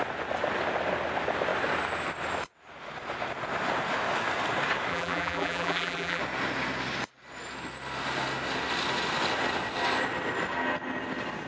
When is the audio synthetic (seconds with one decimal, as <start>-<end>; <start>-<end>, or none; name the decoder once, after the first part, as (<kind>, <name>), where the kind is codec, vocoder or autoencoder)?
4.9-6.2 (vocoder, BigVGAN v2)